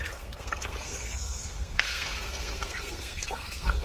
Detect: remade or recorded remade